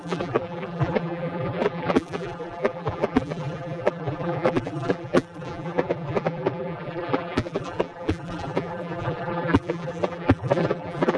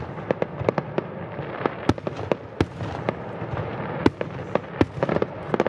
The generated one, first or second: first